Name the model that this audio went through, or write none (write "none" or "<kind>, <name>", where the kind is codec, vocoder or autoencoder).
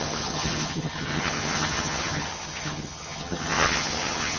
vocoder, HiFi-GAN